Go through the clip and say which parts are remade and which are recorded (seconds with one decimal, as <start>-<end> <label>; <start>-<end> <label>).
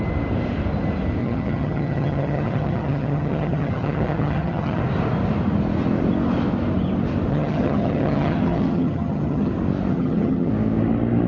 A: 0.0-1.2 recorded; 1.2-4.8 remade; 4.8-7.3 recorded; 7.3-9.5 remade; 9.5-9.9 recorded; 9.9-10.5 remade; 10.5-11.3 recorded